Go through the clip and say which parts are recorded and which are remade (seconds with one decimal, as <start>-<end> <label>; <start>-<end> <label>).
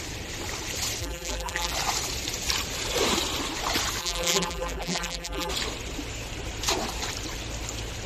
0.0-1.0 recorded; 1.0-1.7 remade; 1.7-4.0 recorded; 4.0-5.5 remade; 5.5-8.1 recorded